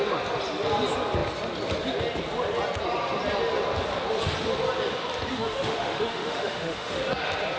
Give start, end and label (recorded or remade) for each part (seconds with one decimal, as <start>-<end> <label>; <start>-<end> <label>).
0.0-5.3 recorded; 5.3-7.0 remade; 7.0-7.6 recorded